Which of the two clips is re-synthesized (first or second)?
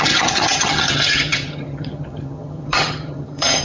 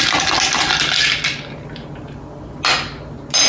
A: first